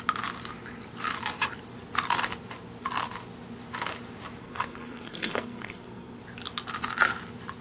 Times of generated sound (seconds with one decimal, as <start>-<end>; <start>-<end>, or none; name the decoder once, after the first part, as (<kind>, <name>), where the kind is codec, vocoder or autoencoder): 4.4-6.2 (codec, SNAC)